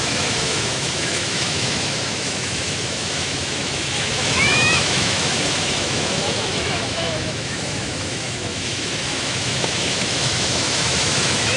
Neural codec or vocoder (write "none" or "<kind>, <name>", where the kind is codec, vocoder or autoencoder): autoencoder, DAC-VAE